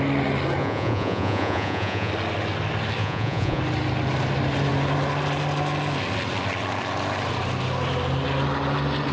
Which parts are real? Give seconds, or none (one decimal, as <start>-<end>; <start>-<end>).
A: 0.0-0.6; 2.1-3.0; 3.6-9.1